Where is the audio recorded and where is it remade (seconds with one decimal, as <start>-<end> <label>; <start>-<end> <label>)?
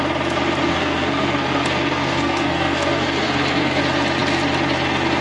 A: 0.0-0.7 recorded; 0.7-3.8 remade; 3.8-5.2 recorded